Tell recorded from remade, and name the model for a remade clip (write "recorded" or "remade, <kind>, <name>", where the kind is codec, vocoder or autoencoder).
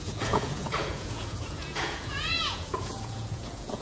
remade, vocoder, Vocos